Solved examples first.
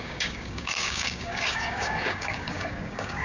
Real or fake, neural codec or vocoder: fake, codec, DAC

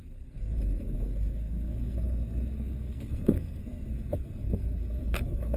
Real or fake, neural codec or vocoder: fake, codec, SNAC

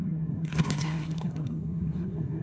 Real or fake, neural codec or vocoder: fake, codec, SNAC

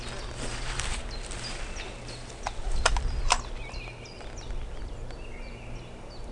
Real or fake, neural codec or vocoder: real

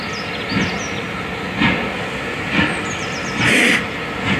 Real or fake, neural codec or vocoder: real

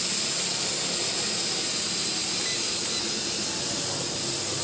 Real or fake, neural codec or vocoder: real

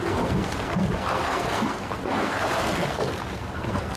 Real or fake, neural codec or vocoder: fake, codec, SNAC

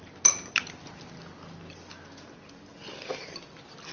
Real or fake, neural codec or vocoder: real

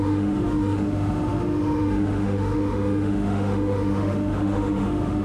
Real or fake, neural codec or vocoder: fake, autoencoder, DAC-VAE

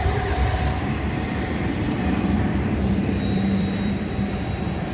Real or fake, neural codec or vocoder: fake, vocoder, BigVGAN v2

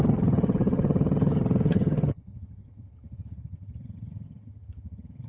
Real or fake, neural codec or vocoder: fake, vocoder, HiFi-GAN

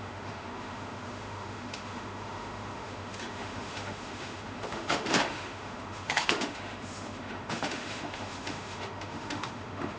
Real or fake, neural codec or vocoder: fake, autoencoder, DAC-VAE